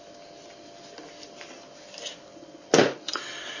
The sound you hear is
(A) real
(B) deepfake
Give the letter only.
A